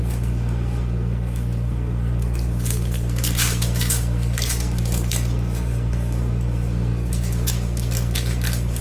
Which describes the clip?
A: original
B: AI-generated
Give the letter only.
B